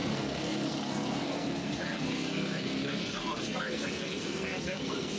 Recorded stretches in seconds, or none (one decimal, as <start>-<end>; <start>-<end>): none